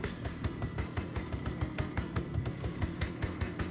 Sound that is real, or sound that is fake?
fake